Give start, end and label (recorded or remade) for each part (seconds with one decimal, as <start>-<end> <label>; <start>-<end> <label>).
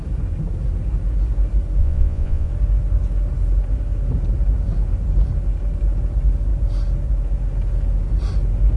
0.0-1.8 recorded; 1.8-2.5 remade; 2.5-8.8 recorded